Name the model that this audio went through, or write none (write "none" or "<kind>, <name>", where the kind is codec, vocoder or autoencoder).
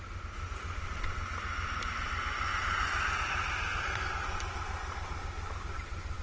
none